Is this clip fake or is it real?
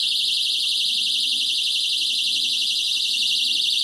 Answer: real